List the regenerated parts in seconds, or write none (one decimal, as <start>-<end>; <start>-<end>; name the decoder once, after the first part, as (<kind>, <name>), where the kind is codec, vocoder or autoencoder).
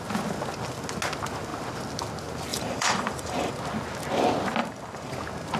2.5-3.5 (vocoder, BigVGAN v2); 4.6-5.1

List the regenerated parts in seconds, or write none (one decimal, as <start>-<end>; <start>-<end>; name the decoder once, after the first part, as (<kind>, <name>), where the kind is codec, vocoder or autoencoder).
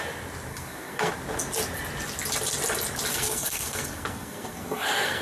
0.5-1.1 (codec, SNAC); 3.1-5.2